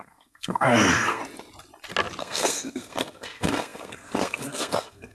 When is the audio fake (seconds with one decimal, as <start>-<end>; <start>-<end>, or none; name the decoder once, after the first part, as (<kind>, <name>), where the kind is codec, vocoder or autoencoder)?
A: 0.0-1.2 (codec, SNAC); 2.2-5.1